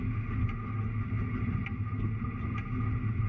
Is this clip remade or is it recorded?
recorded